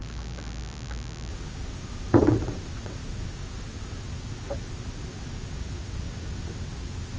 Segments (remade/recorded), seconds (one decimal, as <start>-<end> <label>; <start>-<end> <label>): 0.0-1.3 recorded; 1.3-7.2 remade